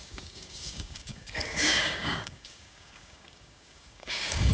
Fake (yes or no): yes